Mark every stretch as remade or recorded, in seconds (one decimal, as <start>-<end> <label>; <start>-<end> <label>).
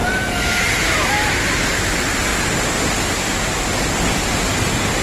0.0-1.1 remade; 1.1-5.0 recorded